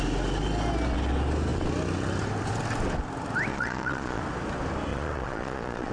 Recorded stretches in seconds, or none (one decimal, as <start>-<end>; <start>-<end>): 0.0-3.5; 4.2-4.9